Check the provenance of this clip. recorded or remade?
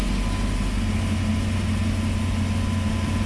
recorded